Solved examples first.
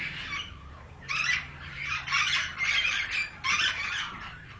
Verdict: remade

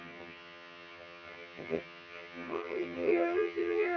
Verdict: remade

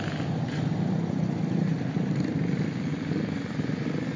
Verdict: recorded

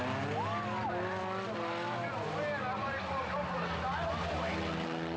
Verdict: recorded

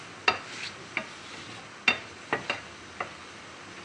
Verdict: recorded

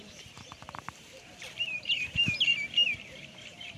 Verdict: remade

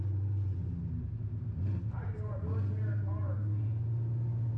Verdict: recorded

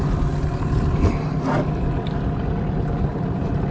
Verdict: recorded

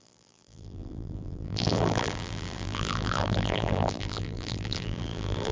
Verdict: remade